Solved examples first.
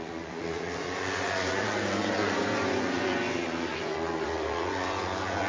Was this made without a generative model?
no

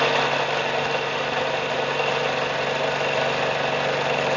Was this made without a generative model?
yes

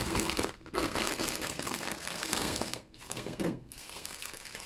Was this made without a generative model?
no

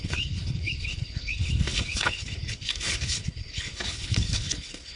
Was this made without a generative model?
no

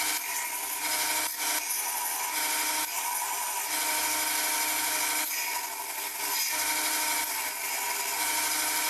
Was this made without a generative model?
yes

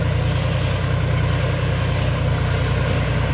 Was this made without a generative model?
yes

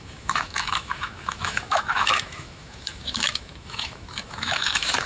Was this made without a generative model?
no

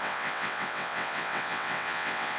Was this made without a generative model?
no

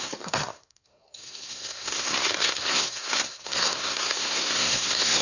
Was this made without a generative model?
no